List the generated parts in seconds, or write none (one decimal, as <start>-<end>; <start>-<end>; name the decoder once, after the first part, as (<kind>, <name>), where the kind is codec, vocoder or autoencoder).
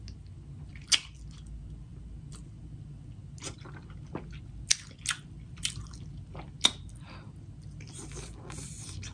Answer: none